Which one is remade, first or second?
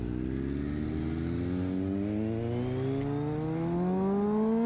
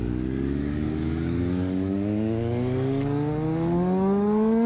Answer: second